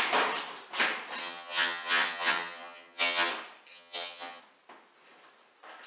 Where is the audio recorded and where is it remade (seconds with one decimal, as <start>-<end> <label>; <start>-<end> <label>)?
0.0-1.2 recorded; 1.2-3.3 remade; 3.3-3.7 recorded; 3.7-4.4 remade; 4.4-5.9 recorded